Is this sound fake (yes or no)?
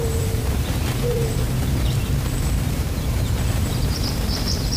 yes